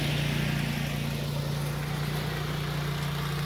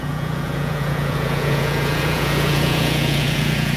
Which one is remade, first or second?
second